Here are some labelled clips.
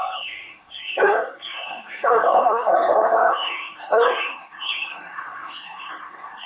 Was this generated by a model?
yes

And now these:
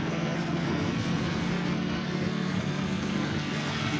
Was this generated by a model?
yes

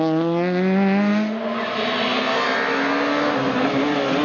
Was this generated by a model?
no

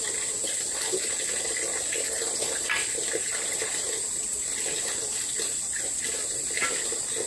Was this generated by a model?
no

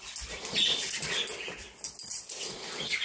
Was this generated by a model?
no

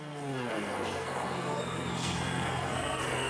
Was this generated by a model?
yes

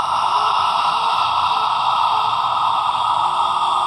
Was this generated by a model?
no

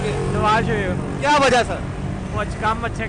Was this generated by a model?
no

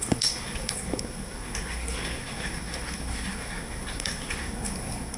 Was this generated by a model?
yes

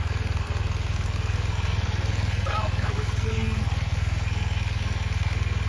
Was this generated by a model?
yes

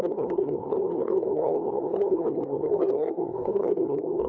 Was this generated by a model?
yes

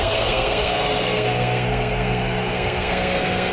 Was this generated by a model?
yes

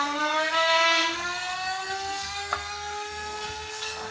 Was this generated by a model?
yes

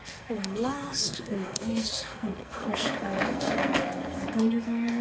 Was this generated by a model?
yes